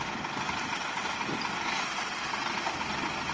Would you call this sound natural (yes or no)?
yes